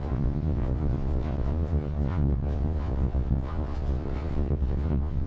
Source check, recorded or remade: remade